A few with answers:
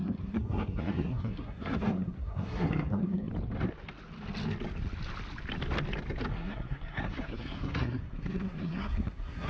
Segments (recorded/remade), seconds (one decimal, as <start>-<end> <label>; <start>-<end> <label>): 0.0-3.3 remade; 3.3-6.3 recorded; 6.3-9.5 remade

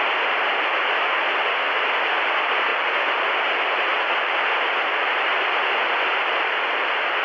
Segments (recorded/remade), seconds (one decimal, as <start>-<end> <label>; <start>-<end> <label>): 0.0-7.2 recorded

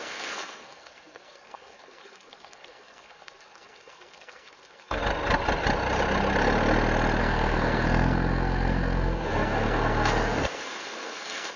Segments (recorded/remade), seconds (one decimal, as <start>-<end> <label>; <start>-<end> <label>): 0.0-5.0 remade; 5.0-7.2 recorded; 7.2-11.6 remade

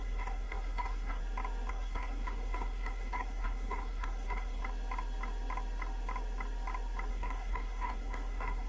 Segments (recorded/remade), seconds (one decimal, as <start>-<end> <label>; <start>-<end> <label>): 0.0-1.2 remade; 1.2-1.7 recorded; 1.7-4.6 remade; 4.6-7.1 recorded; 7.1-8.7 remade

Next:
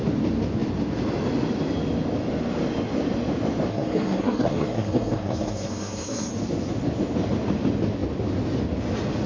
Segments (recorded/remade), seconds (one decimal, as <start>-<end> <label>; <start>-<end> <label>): 0.0-3.7 recorded; 3.7-6.3 remade; 6.3-9.3 recorded